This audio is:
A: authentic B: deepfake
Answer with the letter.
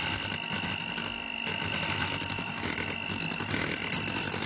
A